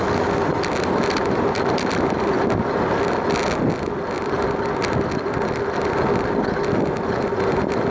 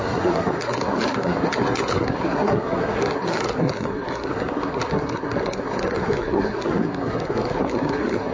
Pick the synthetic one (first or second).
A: second